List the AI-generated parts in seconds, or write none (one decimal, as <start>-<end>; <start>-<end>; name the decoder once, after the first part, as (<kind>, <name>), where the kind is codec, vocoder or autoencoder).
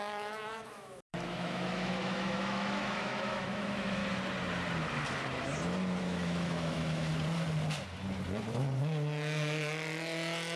0.0-4.0 (autoencoder, DAC-VAE); 6.0-7.1